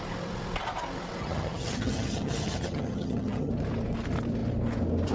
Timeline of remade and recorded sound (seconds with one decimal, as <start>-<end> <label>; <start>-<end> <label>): 0.0-1.2 recorded; 1.2-3.5 remade; 3.5-5.1 recorded